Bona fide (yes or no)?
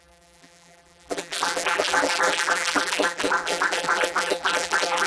no